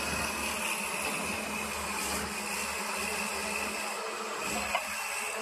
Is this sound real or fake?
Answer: real